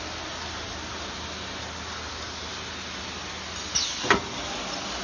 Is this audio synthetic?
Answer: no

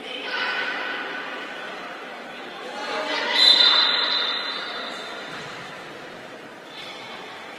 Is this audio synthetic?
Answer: yes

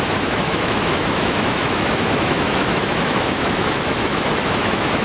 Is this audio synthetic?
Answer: yes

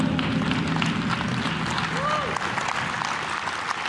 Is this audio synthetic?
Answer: no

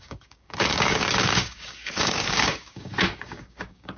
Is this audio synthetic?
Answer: yes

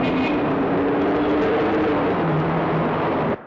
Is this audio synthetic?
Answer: no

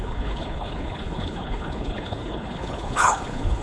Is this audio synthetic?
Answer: yes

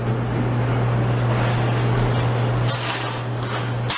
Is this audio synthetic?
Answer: no